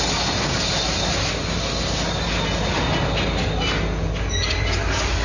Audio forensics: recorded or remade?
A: recorded